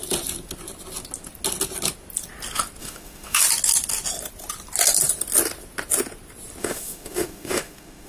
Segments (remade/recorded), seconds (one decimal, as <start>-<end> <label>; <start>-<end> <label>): 0.0-2.8 recorded; 2.8-3.4 remade; 3.4-6.6 recorded; 6.6-8.1 remade